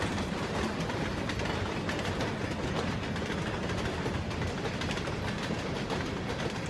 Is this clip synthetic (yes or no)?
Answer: no